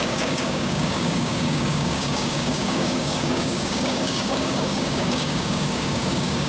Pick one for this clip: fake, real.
fake